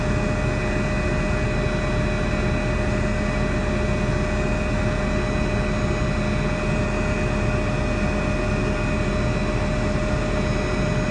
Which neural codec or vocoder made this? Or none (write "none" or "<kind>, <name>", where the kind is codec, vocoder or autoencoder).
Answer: none